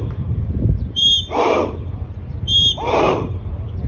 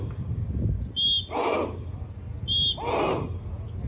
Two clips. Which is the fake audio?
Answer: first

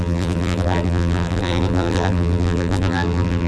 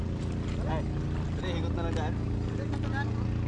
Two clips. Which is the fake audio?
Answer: first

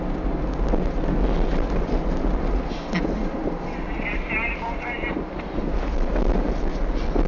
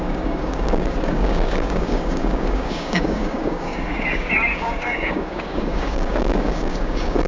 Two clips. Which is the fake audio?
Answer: second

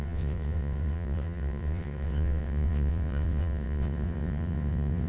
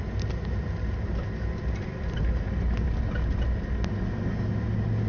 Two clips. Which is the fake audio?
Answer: first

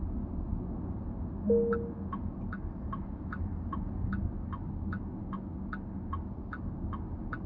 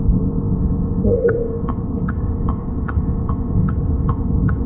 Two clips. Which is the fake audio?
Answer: second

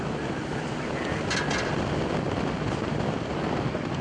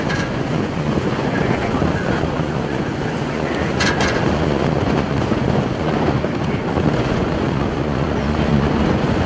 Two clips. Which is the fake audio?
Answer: second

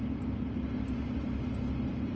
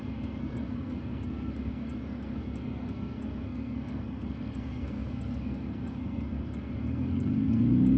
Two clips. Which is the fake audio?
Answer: second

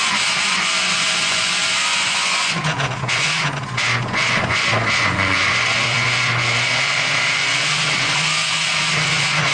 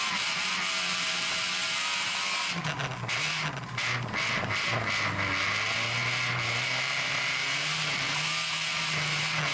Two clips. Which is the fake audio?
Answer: first